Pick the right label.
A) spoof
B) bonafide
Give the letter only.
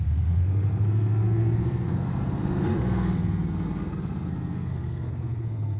A